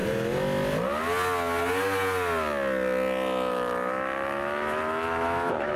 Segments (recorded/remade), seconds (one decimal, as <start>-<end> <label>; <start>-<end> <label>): 0.0-3.5 recorded; 3.5-5.8 remade